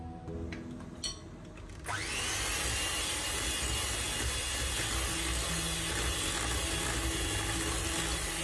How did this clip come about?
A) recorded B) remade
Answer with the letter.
A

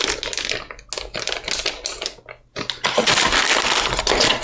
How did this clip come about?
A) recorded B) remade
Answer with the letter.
A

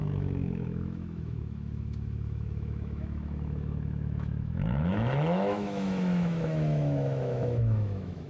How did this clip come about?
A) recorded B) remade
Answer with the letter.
B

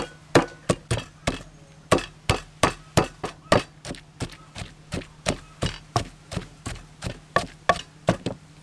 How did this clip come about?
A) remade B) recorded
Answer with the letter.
B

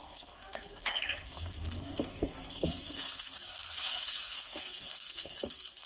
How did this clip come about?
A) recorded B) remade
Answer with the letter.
B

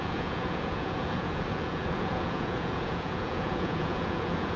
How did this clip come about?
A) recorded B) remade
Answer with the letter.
B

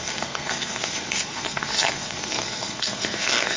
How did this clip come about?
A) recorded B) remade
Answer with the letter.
B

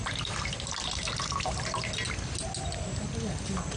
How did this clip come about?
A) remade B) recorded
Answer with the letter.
B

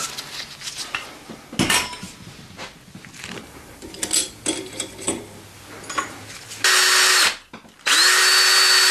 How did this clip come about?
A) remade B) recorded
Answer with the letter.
B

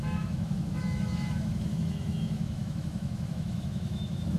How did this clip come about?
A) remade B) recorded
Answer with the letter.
A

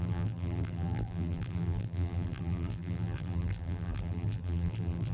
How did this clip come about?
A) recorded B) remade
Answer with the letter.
B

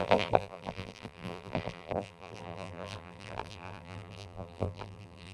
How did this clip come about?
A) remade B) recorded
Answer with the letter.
A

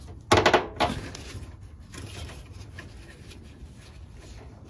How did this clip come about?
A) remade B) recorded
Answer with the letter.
B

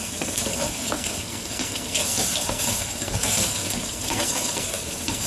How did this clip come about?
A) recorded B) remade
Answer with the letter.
B